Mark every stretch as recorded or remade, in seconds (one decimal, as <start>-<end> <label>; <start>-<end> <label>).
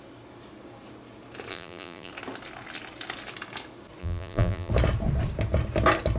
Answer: 0.0-1.5 recorded; 1.5-2.1 remade; 2.1-4.0 recorded; 4.0-4.7 remade; 4.7-6.2 recorded